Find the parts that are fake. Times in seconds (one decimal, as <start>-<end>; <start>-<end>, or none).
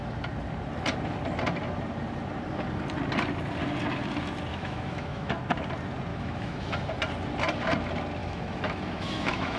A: 4.5-5.3; 6.1-6.7; 8.2-9.6